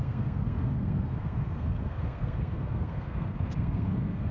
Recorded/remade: remade